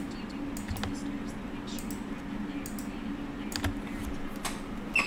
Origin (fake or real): real